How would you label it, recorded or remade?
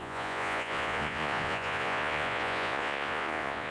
remade